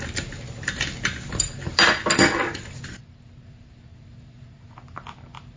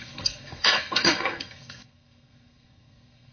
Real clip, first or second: first